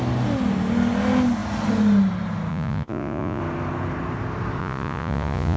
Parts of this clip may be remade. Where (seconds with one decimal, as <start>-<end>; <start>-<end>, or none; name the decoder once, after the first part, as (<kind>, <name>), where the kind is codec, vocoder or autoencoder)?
2.5-3.4 (vocoder, Vocos); 4.6-5.6